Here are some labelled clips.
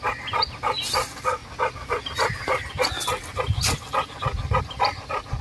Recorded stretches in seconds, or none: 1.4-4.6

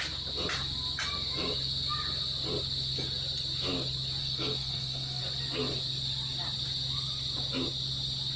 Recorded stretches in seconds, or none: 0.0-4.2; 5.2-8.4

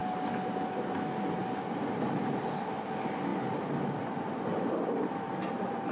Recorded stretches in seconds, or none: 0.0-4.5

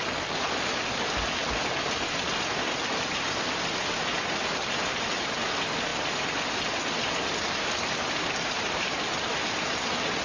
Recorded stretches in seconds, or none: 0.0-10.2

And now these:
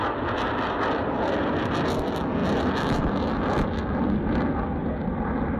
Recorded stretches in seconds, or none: 0.0-5.6

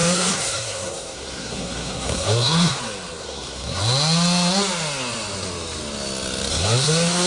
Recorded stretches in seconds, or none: 2.8-3.2; 3.8-6.5

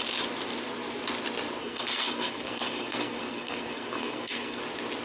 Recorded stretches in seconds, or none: 0.0-1.6; 4.6-5.0